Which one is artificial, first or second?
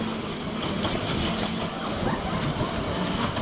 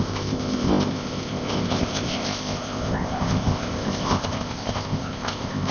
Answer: second